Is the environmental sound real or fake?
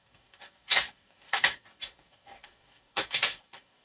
fake